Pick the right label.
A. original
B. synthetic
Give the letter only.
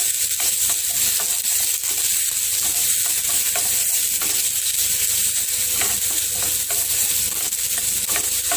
A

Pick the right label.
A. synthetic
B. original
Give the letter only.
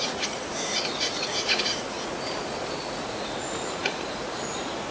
A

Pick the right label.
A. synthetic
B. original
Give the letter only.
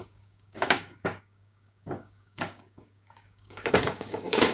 A